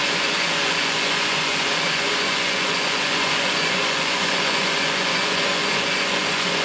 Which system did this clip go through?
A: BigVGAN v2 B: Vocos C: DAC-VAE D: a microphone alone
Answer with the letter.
B